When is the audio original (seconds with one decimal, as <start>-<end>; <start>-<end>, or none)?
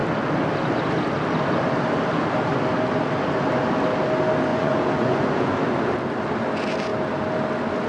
0.0-4.5; 5.5-7.9